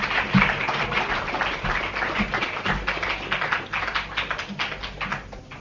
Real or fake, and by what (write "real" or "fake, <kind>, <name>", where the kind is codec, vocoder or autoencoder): real